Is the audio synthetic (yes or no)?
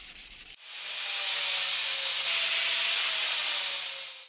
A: no